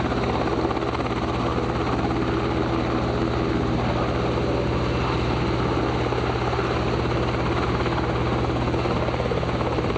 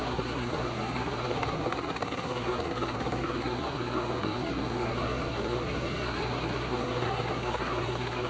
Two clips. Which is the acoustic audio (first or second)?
first